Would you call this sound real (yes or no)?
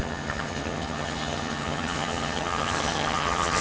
no